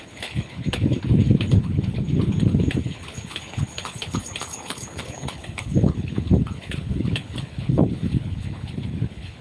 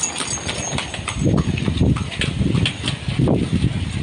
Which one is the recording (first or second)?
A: second